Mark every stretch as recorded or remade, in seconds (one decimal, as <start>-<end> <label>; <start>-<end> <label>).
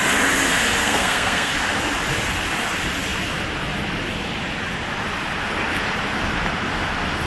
0.0-0.8 recorded; 0.8-1.5 remade; 1.5-7.3 recorded